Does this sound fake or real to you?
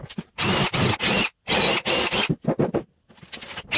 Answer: real